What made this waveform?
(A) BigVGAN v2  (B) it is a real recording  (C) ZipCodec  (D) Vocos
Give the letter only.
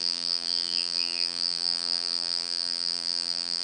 A